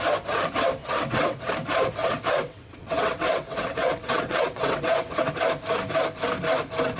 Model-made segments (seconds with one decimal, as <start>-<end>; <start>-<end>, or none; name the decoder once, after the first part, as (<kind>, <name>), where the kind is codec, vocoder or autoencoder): 0.8-1.5 (vocoder, WaveNeXt); 2.0-5.3